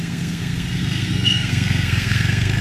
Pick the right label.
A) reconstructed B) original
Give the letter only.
A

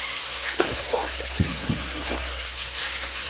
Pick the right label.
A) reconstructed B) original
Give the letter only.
A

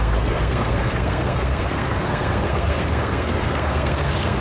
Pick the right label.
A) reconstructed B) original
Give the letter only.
A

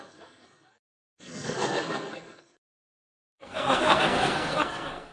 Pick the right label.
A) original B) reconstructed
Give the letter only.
B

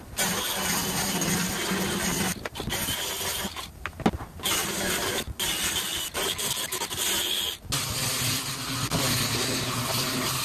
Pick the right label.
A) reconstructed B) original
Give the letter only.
B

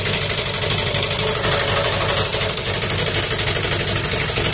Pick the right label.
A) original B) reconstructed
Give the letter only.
A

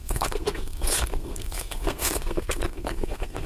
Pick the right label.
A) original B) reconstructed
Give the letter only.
B